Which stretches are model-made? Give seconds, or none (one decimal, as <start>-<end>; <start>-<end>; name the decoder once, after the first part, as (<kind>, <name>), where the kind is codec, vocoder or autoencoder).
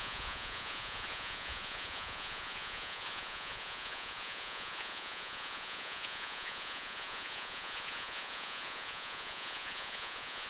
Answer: 0.0-10.5 (vocoder, Vocos)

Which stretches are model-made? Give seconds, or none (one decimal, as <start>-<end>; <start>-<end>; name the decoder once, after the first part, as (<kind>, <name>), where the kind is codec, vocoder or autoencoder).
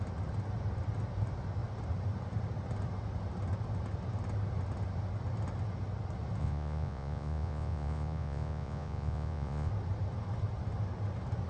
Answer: 6.4-9.7 (vocoder, Vocos)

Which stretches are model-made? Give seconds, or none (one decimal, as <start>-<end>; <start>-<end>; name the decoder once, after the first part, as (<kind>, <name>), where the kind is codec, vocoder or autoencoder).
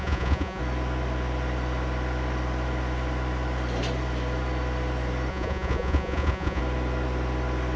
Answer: 0.0-0.6 (vocoder, Vocos); 5.3-6.6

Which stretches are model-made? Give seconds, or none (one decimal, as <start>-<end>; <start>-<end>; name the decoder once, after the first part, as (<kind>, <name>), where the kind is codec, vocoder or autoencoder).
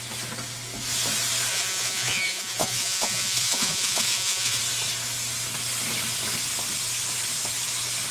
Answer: 1.5-4.6 (vocoder, Vocos)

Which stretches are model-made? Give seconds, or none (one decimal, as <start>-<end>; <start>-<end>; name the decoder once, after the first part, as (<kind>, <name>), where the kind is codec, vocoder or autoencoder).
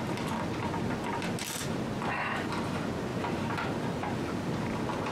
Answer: none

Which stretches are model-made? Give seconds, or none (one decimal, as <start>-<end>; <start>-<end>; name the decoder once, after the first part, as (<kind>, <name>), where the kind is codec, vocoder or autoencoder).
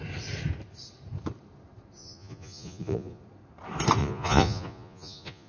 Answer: 2.0-3.2 (vocoder, Vocos); 4.0-5.5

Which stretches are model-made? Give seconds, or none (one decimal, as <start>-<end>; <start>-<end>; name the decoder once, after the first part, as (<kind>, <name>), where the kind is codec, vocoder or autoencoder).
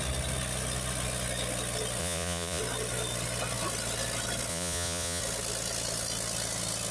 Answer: 2.0-2.6 (vocoder, Vocos); 4.5-5.2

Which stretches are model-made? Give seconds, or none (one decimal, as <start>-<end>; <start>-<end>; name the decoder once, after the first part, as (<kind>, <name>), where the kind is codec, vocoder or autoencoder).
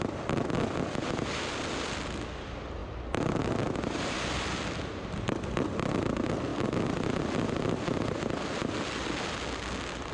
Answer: none